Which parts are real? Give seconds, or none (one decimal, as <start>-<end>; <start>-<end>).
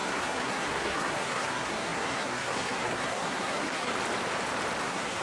3.9-4.8